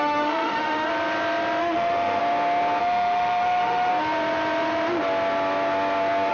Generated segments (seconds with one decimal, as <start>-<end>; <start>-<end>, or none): 0.0-0.9; 1.6-2.2; 2.8-3.9